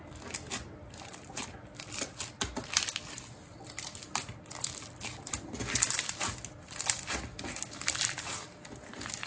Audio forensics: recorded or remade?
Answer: recorded